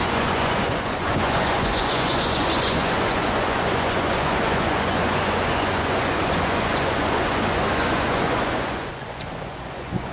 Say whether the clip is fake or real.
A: fake